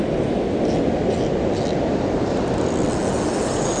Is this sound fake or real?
real